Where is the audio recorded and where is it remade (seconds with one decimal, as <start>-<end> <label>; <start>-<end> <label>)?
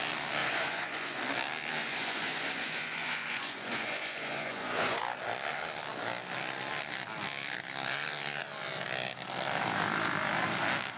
0.0-0.4 recorded; 0.4-1.2 remade; 1.2-1.8 recorded; 1.8-5.0 remade; 5.0-11.0 recorded